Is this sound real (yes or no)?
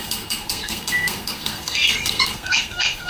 no